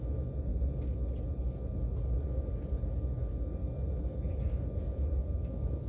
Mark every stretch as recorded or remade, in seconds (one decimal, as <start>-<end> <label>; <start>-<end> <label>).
0.0-5.2 recorded; 5.2-5.9 remade